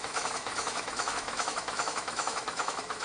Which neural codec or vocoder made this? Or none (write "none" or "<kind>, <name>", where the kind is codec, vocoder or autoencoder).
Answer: autoencoder, DAC-VAE